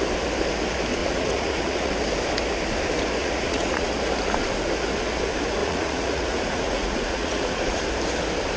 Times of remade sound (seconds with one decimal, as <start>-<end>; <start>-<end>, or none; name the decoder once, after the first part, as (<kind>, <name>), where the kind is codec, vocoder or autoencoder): 1.0-1.9 (vocoder, Vocos); 3.2-3.9; 5.6-7.8